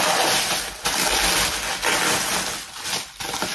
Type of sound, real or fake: real